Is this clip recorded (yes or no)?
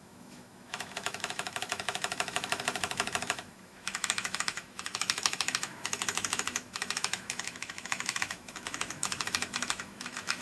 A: no